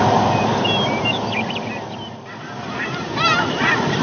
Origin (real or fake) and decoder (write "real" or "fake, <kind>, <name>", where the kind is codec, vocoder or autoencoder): real